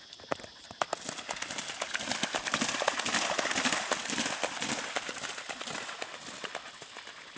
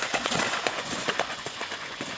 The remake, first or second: second